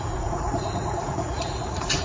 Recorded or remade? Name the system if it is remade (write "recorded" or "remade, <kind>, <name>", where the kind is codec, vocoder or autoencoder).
remade, vocoder, Vocos